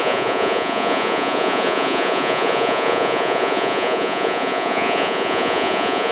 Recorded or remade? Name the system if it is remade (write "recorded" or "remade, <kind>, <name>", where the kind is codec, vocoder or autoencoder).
remade, vocoder, Vocos